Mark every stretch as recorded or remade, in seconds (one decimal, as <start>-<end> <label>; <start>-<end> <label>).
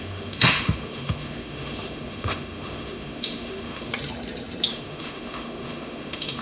0.0-3.9 remade; 3.9-4.7 recorded; 4.7-6.4 remade